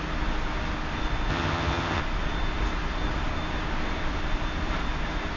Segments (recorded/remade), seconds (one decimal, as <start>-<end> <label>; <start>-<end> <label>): 0.0-1.3 recorded; 1.3-2.0 remade; 2.0-5.4 recorded